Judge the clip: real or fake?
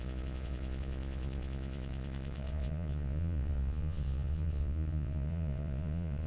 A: fake